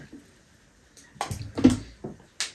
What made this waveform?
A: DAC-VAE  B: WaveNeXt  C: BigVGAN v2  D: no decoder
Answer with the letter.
D